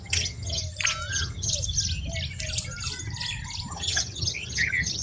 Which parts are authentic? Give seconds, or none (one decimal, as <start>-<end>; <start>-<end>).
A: 0.6-1.1; 1.5-3.7